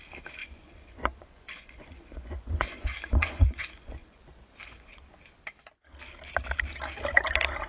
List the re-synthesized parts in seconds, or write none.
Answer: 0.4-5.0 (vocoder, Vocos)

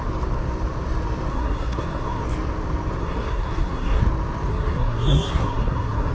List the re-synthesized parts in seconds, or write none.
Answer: 1.3-2.2 (codec, SNAC); 3.0-4.0; 4.5-6.1

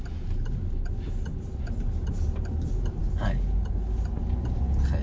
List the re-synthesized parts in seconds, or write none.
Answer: none

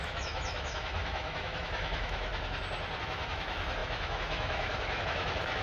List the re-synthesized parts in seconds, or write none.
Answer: 0.0-2.3 (autoencoder, DAC-VAE); 3.0-5.6

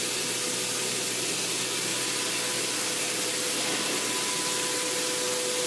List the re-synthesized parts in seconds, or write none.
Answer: none

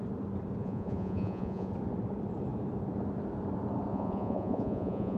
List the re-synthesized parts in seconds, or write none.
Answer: 0.6-1.7 (vocoder, Vocos); 3.9-5.2